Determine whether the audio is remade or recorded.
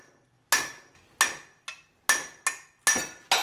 recorded